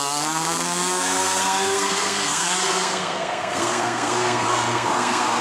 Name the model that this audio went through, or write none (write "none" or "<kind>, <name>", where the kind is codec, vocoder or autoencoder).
codec, SNAC